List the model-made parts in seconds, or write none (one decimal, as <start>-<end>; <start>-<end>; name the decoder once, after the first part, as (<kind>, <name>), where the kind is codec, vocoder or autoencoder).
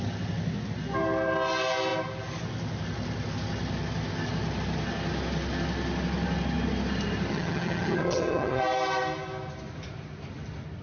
7.3-8.6 (vocoder, HiFi-GAN)